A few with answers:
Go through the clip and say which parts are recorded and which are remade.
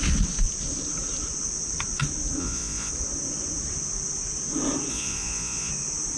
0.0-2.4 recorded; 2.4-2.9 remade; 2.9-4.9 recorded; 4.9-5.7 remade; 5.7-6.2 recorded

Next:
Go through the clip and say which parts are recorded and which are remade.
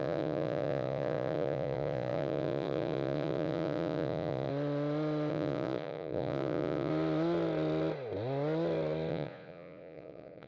0.0-4.5 remade; 4.5-5.3 recorded; 5.3-6.9 remade; 6.9-9.1 recorded; 9.1-10.5 remade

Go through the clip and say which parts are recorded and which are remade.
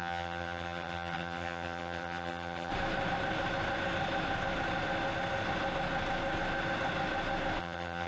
0.0-2.7 remade; 2.7-7.6 recorded; 7.6-8.1 remade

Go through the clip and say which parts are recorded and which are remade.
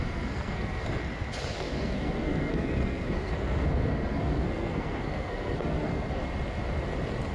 0.0-1.0 remade; 1.0-1.6 recorded; 1.6-6.2 remade; 6.2-7.3 recorded